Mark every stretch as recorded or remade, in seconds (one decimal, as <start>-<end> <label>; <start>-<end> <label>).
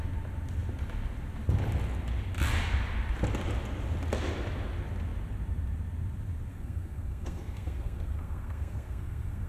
0.0-6.5 recorded; 6.5-9.5 remade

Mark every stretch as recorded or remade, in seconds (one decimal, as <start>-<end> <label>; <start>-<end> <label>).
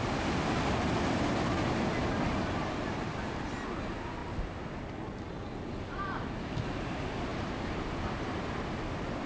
0.0-9.3 recorded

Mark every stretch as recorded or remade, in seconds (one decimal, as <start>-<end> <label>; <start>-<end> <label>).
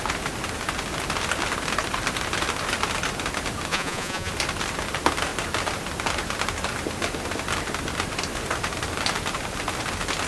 0.0-3.7 recorded; 3.7-4.3 remade; 4.3-10.3 recorded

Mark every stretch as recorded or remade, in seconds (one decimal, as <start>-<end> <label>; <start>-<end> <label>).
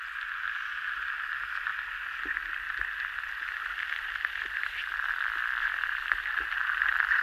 0.0-7.2 recorded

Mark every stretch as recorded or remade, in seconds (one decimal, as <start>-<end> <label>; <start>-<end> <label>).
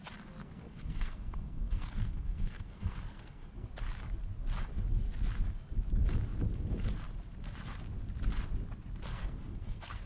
0.0-0.4 recorded; 0.4-3.7 remade; 3.7-9.1 recorded; 9.1-10.1 remade